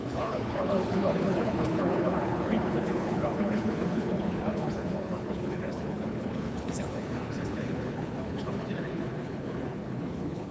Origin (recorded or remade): remade